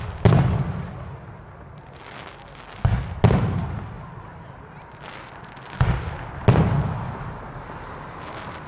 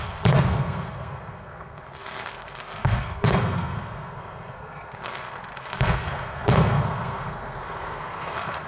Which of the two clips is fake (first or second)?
second